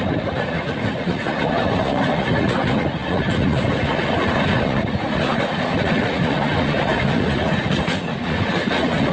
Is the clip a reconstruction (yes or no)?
yes